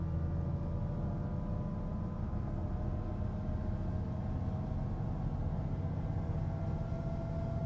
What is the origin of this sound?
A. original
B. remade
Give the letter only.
A